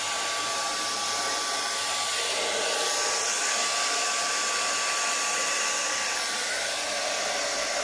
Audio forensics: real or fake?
real